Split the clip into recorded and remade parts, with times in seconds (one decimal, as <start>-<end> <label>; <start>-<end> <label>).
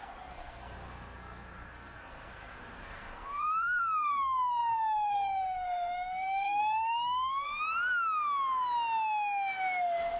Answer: 0.0-7.5 remade; 7.5-10.2 recorded